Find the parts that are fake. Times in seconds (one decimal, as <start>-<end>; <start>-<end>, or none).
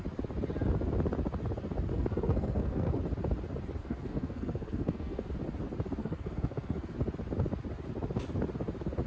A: 1.9-3.0; 3.8-5.3; 6.0-6.9